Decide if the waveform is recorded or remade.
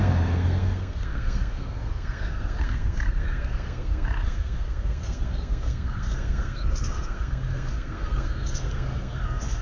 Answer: remade